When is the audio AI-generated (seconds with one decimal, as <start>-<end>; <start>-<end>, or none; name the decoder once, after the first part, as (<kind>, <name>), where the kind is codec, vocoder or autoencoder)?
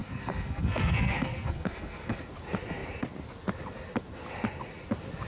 0.0-2.2 (codec, SNAC)